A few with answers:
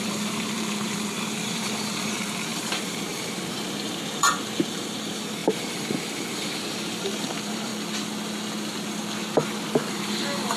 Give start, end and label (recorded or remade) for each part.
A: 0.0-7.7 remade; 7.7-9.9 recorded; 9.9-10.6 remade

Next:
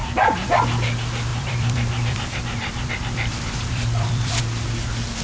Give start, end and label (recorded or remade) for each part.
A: 0.0-1.3 recorded; 1.3-4.4 remade; 4.4-5.2 recorded

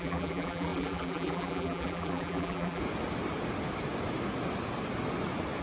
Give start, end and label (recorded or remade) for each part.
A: 0.0-2.8 remade; 2.8-5.6 recorded

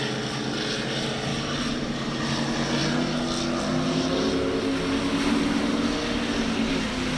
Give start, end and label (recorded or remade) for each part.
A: 0.0-1.3 recorded; 1.3-2.2 remade; 2.2-7.2 recorded

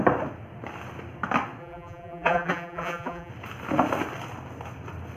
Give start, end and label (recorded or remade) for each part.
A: 0.0-1.6 recorded; 1.6-3.3 remade; 3.3-5.2 recorded